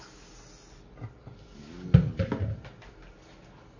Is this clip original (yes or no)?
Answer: yes